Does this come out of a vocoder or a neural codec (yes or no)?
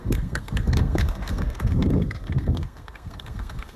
yes